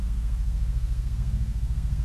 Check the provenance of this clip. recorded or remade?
remade